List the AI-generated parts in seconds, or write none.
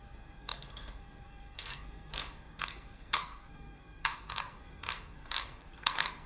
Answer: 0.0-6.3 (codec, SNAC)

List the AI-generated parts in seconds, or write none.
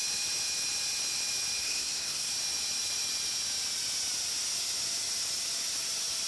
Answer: 1.6-2.3 (codec, SNAC)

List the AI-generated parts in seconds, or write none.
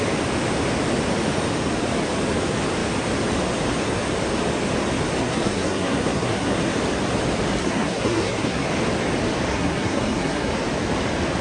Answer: 5.2-6.6 (codec, SNAC); 7.6-8.7; 9.5-10.5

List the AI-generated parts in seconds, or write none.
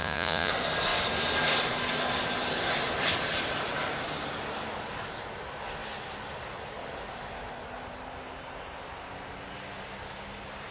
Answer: 0.0-0.5 (vocoder, Vocos)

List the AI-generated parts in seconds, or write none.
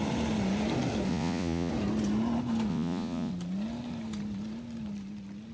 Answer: 1.1-1.7 (vocoder, Vocos); 2.7-3.3